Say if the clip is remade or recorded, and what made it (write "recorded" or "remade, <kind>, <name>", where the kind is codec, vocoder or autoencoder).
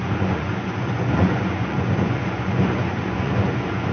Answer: remade, vocoder, Vocos